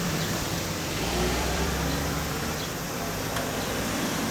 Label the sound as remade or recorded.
remade